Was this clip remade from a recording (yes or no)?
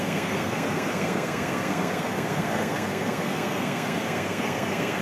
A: yes